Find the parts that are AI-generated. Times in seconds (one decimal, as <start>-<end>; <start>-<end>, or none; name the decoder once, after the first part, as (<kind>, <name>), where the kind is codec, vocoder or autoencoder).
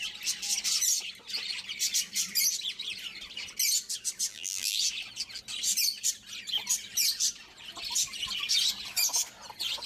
4.3-4.8 (vocoder, BigVGAN v2)